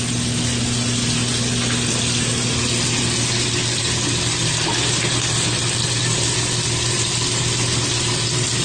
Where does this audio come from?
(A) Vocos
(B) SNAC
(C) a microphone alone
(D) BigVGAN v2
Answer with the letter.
C